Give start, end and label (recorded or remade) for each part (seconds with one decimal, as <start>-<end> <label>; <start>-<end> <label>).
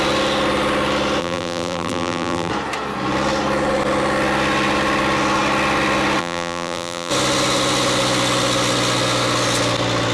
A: 0.0-1.2 recorded; 1.2-2.5 remade; 2.5-6.2 recorded; 6.2-7.1 remade; 7.1-10.1 recorded